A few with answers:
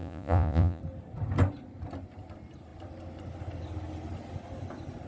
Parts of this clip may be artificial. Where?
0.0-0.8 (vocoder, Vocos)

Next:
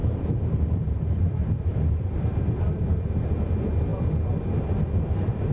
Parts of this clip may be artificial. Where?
0.0-3.3 (vocoder, BigVGAN v2)

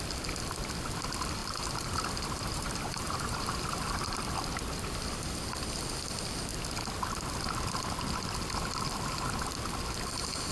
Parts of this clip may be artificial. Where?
1.4-4.2 (vocoder, BigVGAN v2)

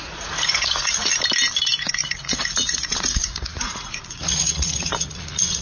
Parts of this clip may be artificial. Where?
0.0-1.1 (vocoder, Vocos); 1.8-5.6